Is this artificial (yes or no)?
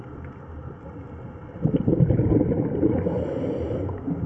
no